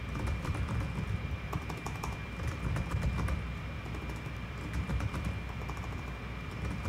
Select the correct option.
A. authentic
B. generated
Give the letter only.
B